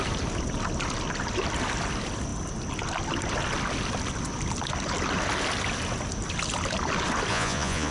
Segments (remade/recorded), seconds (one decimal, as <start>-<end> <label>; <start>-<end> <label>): 0.0-7.3 recorded; 7.3-7.9 remade